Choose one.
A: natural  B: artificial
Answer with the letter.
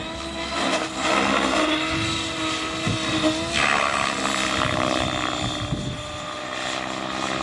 A